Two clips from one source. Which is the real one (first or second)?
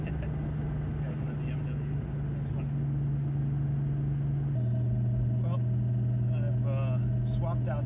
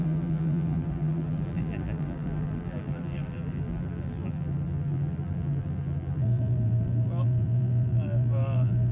first